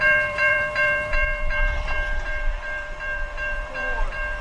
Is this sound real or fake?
fake